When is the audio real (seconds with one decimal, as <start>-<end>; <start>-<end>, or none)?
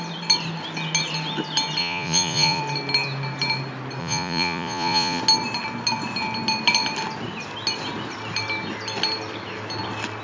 0.0-1.8; 2.6-4.0; 5.2-10.2